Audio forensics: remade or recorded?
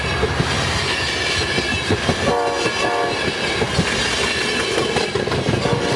recorded